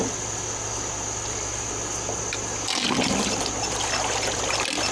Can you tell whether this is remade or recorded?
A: recorded